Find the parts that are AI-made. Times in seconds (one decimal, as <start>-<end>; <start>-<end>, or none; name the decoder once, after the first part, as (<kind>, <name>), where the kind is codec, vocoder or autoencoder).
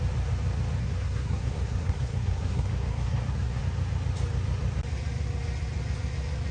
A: 0.8-3.6 (codec, SNAC)